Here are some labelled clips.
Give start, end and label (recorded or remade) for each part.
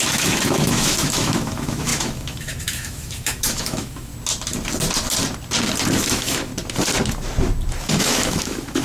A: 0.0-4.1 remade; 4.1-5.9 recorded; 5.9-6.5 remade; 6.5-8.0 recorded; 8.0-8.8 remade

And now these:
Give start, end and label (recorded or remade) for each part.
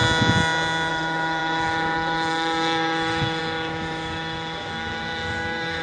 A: 0.0-0.9 recorded; 0.9-5.8 remade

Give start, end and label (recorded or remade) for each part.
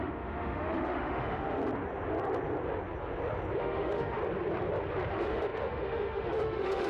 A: 0.0-1.6 remade; 1.6-3.6 recorded; 3.6-4.2 remade; 4.2-5.1 recorded; 5.1-6.9 remade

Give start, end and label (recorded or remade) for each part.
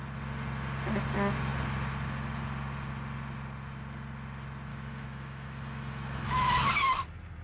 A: 0.0-4.7 recorded; 4.7-6.7 remade; 6.7-7.4 recorded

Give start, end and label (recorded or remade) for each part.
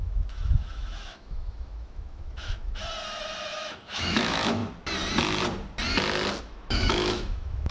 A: 0.0-2.8 remade; 2.8-3.5 recorded; 3.5-4.6 remade; 4.6-6.4 recorded; 6.4-7.7 remade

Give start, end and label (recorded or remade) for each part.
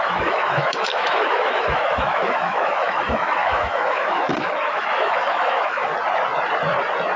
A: 0.0-5.9 remade; 5.9-7.2 recorded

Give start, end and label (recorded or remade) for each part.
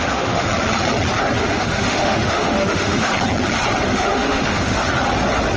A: 0.0-0.5 remade; 0.5-1.4 recorded; 1.4-3.1 remade; 3.1-3.8 recorded; 3.8-4.8 remade; 4.8-5.6 recorded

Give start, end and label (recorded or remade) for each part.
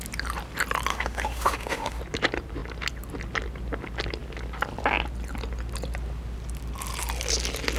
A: 0.0-0.9 recorded; 0.9-2.0 remade; 2.0-7.8 recorded